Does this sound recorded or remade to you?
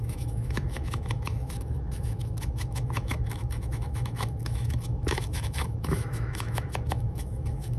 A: remade